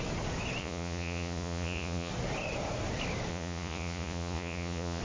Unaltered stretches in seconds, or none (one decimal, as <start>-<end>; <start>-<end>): 0.0-0.6; 2.1-3.3

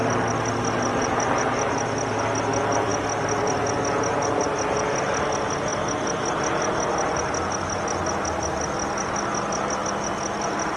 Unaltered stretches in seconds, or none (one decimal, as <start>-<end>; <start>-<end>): 0.0-10.8